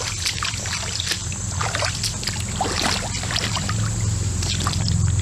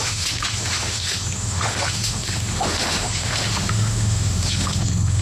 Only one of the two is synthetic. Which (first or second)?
second